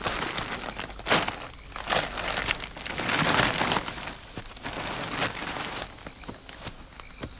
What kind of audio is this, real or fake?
real